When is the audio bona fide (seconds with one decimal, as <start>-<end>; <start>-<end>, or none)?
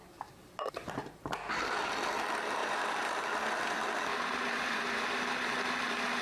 1.2-2.6; 3.2-4.1; 5.3-6.2